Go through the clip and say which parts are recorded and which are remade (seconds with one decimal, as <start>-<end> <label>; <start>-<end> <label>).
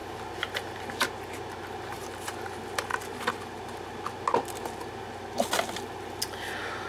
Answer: 0.0-6.9 recorded